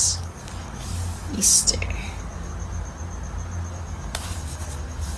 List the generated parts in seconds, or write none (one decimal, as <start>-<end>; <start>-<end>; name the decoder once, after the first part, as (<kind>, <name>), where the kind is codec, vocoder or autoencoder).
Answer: 0.0-2.5 (codec, DAC); 3.7-5.2